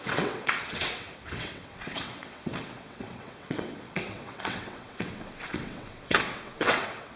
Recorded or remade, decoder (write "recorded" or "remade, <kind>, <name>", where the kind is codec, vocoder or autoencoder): remade, vocoder, WaveNeXt